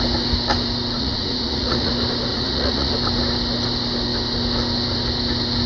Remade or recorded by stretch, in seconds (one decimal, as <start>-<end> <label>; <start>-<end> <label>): 0.0-1.0 recorded; 1.0-1.9 remade; 1.9-2.3 recorded; 2.3-2.9 remade; 2.9-5.7 recorded